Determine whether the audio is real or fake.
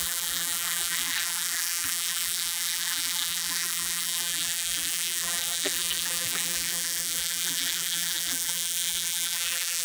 fake